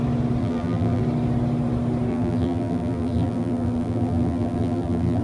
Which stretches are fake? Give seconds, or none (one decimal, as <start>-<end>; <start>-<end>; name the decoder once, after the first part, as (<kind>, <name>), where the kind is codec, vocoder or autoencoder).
0.4-1.0 (vocoder, BigVGAN v2); 2.1-5.2